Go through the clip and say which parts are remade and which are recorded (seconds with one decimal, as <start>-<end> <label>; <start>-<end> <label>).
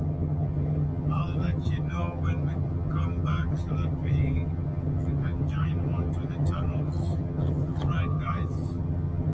0.0-9.3 remade